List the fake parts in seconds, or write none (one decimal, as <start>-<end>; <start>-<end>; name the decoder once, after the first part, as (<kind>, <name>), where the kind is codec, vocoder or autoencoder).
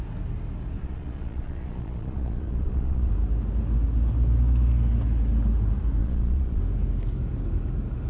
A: 0.8-3.1 (vocoder, Vocos); 6.0-6.6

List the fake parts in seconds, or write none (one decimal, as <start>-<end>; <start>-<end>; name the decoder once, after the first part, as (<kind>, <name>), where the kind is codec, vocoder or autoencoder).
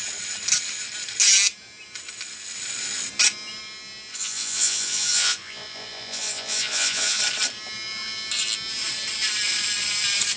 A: 4.1-7.2 (vocoder, Vocos)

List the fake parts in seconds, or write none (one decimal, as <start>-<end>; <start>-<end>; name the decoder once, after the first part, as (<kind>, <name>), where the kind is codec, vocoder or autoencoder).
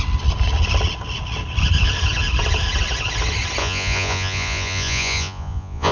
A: 3.6-5.9 (vocoder, Vocos)